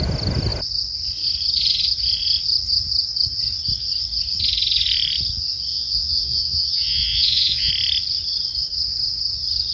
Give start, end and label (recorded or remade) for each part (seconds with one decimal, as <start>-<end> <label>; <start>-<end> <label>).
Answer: 0.0-5.7 recorded; 5.7-7.7 remade; 7.7-9.7 recorded